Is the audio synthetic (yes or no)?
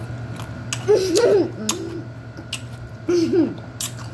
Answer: no